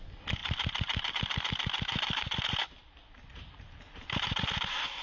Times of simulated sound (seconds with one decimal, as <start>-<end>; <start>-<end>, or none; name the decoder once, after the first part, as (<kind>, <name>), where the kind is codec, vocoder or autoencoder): 3.3-4.4 (vocoder, BigVGAN v2)